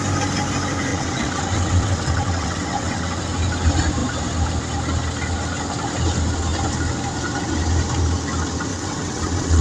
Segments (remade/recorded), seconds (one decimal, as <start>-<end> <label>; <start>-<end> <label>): 0.0-0.9 recorded; 0.9-3.2 remade; 3.2-8.7 recorded; 8.7-9.6 remade